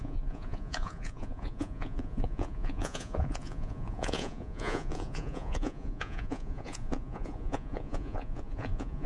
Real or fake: fake